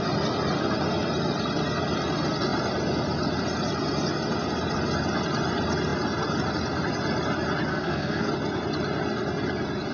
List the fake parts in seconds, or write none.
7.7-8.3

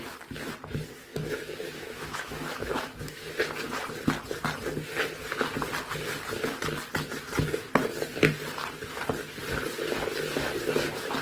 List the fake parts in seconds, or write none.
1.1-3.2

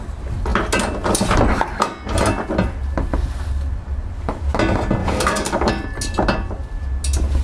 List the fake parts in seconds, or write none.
5.0-5.7

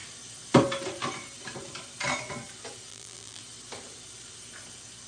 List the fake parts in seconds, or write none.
2.9-3.4